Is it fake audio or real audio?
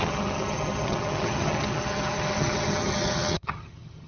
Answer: fake